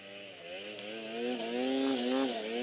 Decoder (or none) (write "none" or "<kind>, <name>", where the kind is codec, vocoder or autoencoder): none